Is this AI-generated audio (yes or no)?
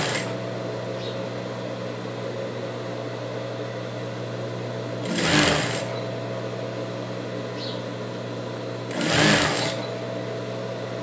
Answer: no